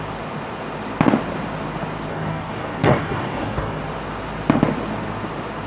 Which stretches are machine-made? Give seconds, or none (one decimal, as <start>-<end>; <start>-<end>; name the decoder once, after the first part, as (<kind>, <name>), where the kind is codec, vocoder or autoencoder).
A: 2.1-3.8 (codec, DAC)